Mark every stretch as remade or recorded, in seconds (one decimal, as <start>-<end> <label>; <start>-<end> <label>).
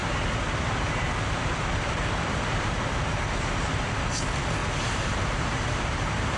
0.0-3.1 remade; 3.1-4.6 recorded; 4.6-6.4 remade